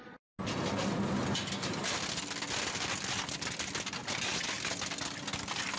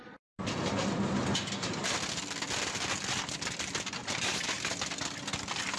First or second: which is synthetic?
second